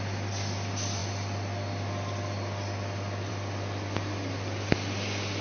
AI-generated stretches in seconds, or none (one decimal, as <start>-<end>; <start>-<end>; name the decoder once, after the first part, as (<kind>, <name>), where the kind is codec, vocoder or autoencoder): none

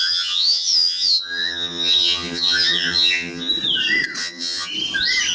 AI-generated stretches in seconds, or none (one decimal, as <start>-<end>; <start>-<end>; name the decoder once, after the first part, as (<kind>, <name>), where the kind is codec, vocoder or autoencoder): 0.0-3.5 (vocoder, HiFi-GAN); 4.2-4.7

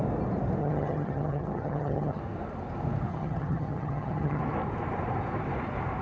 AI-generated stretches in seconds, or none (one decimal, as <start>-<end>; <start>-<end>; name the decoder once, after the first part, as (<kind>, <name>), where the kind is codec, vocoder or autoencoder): 0.6-2.2 (vocoder, HiFi-GAN); 3.1-4.4

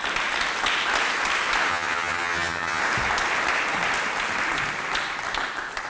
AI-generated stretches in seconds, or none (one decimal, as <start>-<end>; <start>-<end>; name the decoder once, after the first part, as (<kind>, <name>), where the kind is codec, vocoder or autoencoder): 1.7-2.8 (vocoder, HiFi-GAN)

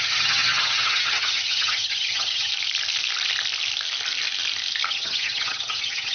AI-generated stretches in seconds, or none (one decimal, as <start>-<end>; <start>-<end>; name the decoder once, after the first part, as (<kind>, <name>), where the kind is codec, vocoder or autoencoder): 0.0-2.5 (vocoder, HiFi-GAN); 4.9-6.1

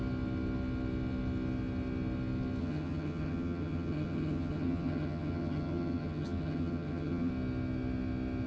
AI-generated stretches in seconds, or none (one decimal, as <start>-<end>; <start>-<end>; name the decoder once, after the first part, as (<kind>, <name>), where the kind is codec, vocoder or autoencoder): 2.6-7.3 (vocoder, HiFi-GAN)

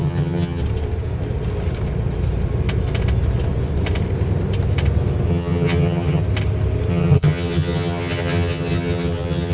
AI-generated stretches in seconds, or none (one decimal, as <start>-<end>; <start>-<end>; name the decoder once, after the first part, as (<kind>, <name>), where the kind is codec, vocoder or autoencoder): 0.0-0.6 (vocoder, HiFi-GAN); 5.3-6.2; 6.9-9.5

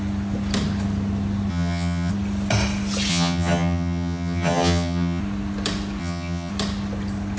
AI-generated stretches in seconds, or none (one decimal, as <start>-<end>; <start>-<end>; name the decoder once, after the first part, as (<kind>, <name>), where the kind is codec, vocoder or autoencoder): 1.5-2.1 (vocoder, HiFi-GAN); 3.1-5.2; 6.0-6.5